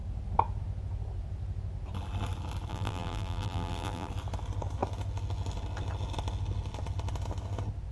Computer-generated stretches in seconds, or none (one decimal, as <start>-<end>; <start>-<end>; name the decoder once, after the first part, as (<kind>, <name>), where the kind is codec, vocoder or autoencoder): 2.7-4.1 (vocoder, BigVGAN v2)

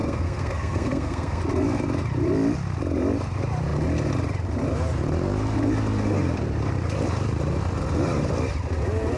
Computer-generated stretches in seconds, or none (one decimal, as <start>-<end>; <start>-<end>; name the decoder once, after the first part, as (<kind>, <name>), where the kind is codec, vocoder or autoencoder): 0.0-1.4 (codec, SNAC)

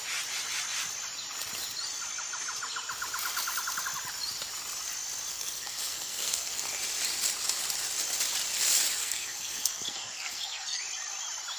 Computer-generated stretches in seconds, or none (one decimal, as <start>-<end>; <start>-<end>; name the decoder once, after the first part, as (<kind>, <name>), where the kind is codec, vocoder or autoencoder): 5.3-6.8 (codec, SNAC); 9.0-10.8

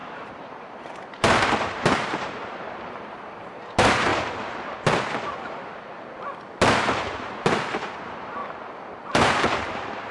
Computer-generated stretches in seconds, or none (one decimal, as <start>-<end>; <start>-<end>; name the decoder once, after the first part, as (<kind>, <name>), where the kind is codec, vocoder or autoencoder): 0.0-4.1 (vocoder, BigVGAN v2); 7.3-8.4; 9.1-10.1